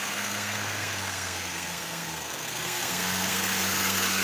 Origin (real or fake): fake